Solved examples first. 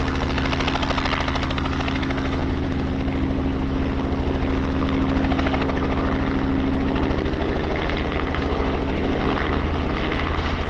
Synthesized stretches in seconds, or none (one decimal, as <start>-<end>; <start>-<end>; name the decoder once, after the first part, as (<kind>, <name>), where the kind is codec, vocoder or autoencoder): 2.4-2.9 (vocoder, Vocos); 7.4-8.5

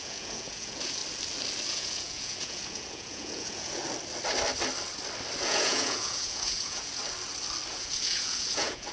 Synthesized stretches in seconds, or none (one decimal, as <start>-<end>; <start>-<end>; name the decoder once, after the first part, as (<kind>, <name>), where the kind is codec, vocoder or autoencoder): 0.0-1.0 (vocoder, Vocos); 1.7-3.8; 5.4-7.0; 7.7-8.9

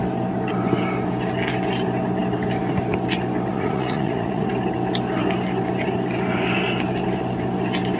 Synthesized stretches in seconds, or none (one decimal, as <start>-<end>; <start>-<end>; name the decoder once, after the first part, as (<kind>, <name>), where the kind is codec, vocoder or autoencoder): 3.5-4.5 (vocoder, Vocos)

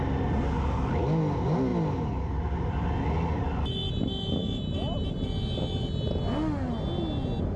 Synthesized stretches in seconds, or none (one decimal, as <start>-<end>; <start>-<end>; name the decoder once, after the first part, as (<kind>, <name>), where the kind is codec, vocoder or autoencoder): none

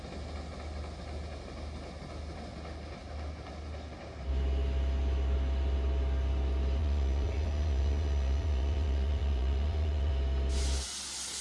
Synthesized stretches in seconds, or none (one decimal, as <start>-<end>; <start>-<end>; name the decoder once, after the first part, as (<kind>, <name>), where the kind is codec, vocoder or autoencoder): 6.8-10.1 (vocoder, Vocos)

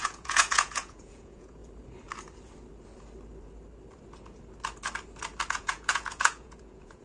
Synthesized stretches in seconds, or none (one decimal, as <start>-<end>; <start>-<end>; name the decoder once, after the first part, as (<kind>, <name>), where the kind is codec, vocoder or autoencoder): 0.0-1.6 (vocoder, Vocos); 5.5-7.0

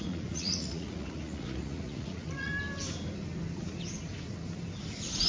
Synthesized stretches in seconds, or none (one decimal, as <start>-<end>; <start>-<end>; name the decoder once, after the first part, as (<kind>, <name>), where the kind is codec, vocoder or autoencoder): 0.0-2.5 (vocoder, Vocos)

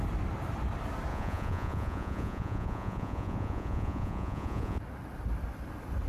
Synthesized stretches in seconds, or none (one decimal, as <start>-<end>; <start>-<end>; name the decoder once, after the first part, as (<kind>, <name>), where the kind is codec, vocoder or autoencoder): 1.1-4.8 (vocoder, Vocos)